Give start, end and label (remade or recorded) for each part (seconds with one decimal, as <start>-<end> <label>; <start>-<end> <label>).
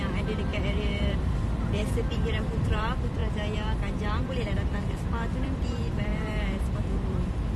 0.0-3.2 remade; 3.2-4.2 recorded; 4.2-7.6 remade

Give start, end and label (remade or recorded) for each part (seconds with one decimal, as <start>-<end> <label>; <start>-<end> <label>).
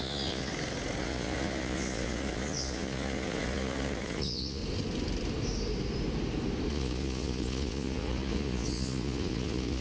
0.0-0.5 remade; 0.5-1.0 recorded; 1.0-4.6 remade; 4.6-6.7 recorded; 6.7-9.8 remade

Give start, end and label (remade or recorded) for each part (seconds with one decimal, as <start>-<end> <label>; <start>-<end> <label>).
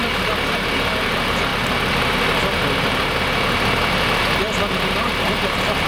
0.0-1.0 recorded; 1.0-1.5 remade; 1.5-5.0 recorded; 5.0-5.9 remade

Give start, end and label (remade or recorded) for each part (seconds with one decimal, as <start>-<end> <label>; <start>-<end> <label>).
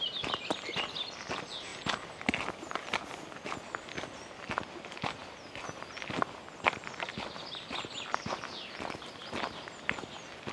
0.0-10.5 recorded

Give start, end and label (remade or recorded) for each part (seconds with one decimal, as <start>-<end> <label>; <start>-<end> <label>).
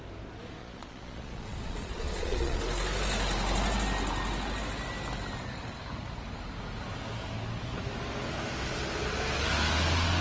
0.0-0.6 recorded; 0.6-2.6 remade; 2.6-10.2 recorded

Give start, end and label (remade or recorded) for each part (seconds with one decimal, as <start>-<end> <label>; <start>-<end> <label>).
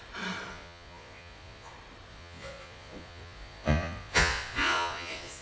0.0-0.5 recorded; 0.5-1.7 remade; 1.7-2.1 recorded; 2.1-5.4 remade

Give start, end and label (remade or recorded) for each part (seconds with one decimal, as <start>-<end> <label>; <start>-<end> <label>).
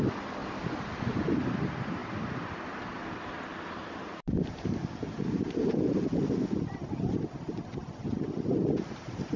0.0-8.0 recorded; 8.0-9.4 remade